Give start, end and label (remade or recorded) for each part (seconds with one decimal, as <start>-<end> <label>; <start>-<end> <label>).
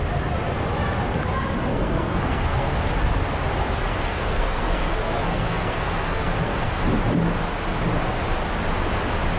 0.0-1.7 recorded; 1.7-2.8 remade; 2.8-3.8 recorded; 3.8-6.7 remade; 6.7-9.4 recorded